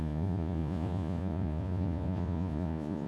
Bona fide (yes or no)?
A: no